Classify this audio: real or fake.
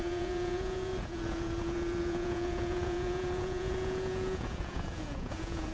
fake